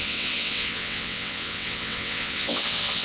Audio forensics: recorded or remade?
remade